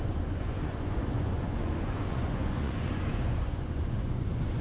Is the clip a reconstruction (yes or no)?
yes